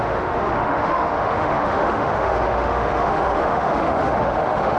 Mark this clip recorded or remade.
remade